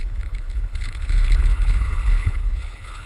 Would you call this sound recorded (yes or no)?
no